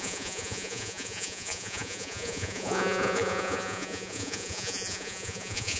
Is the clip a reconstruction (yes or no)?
yes